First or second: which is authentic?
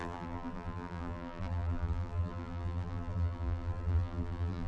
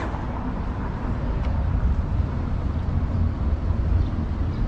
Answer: second